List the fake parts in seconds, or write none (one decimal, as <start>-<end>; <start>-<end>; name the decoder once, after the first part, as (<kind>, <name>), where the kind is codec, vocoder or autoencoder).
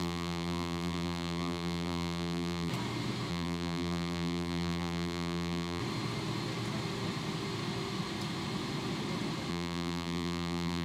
0.0-2.7 (vocoder, BigVGAN v2); 3.3-5.8; 9.5-10.8